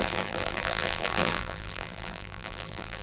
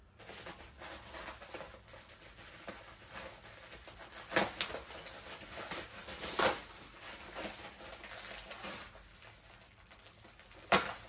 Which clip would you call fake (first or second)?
first